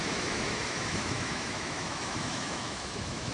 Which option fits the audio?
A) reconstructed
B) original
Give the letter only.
A